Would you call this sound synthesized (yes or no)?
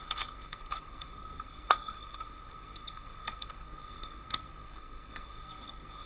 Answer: yes